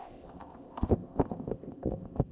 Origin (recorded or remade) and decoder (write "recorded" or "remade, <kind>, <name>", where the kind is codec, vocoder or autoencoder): remade, codec, ZipCodec